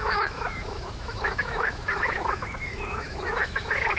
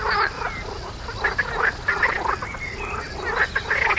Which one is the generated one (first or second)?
first